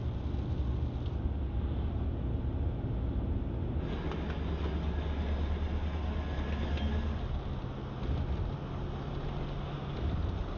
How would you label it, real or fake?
real